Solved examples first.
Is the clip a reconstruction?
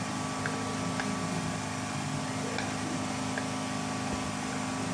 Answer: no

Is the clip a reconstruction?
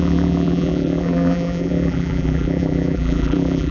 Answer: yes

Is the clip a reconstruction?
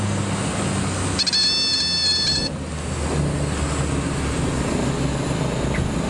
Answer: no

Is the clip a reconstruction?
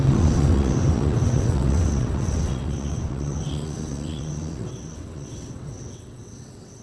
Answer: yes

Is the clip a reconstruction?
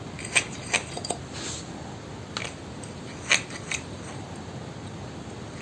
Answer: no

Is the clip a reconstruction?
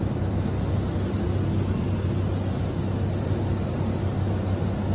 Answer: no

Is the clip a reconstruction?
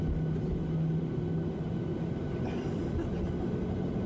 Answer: no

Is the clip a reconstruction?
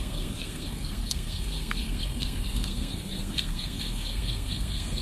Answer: yes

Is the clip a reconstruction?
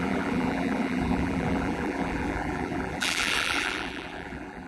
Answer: yes